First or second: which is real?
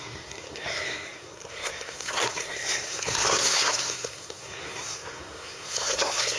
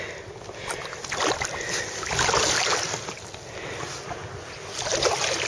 second